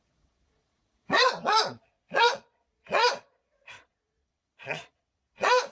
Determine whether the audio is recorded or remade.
remade